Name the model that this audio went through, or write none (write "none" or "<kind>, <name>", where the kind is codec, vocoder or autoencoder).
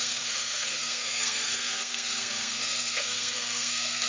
codec, SNAC